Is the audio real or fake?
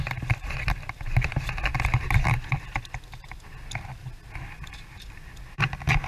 real